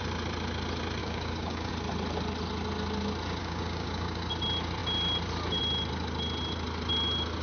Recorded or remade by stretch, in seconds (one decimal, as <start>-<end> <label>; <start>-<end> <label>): 0.0-1.0 recorded; 1.0-1.7 remade; 1.7-3.4 recorded; 3.4-4.3 remade; 4.3-7.4 recorded